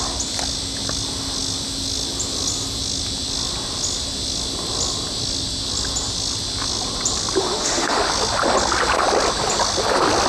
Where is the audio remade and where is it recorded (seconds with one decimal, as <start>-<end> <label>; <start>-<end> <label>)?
0.0-7.4 recorded; 7.4-8.0 remade; 8.0-10.3 recorded